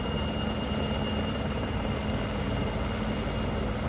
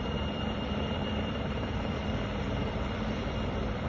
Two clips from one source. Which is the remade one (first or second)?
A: second